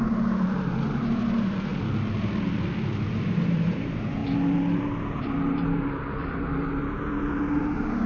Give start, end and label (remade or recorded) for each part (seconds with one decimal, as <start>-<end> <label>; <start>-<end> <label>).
0.0-1.7 remade; 1.7-3.1 recorded; 3.1-4.2 remade; 4.2-7.6 recorded; 7.6-8.1 remade